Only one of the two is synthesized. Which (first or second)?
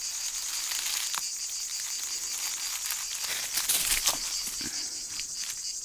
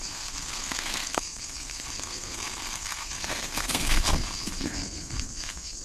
second